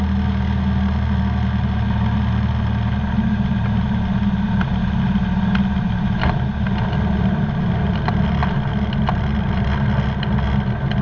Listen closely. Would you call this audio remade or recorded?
recorded